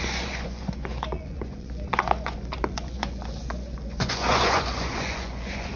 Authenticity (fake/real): fake